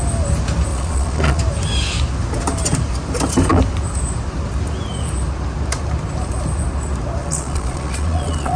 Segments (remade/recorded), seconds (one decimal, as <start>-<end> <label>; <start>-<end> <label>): 0.0-0.7 recorded; 0.7-1.4 remade; 1.4-7.2 recorded; 7.2-8.6 remade